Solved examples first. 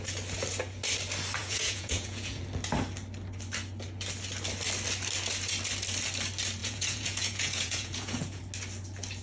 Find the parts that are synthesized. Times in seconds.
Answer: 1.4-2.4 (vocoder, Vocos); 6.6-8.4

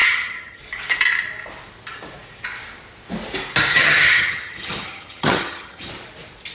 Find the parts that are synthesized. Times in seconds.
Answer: 0.0-0.6 (vocoder, HiFi-GAN); 3.7-5.9

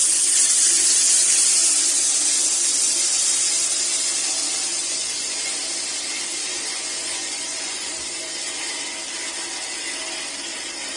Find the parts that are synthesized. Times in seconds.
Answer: 4.8-5.6 (vocoder, Vocos); 6.4-8.6

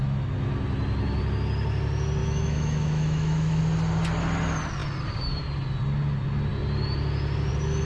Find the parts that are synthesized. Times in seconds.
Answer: 2.2-3.6 (autoencoder, DAC-VAE)

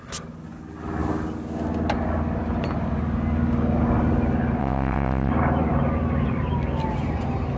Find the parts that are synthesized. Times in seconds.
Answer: 4.6-5.3 (vocoder, WaveNeXt)

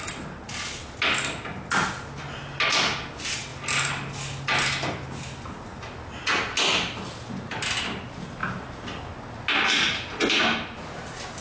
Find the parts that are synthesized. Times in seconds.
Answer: none

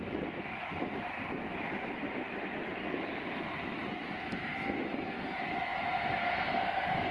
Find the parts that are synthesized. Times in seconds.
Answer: 2.7-3.8 (vocoder, BigVGAN v2); 5.7-6.2